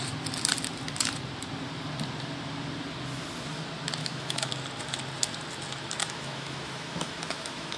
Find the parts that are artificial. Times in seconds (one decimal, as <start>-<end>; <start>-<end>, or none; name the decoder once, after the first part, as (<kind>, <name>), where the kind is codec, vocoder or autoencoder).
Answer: 4.0-4.5 (autoencoder, DAC-VAE); 6.0-7.8